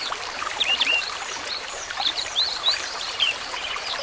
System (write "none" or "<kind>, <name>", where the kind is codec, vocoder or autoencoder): vocoder, BigVGAN v2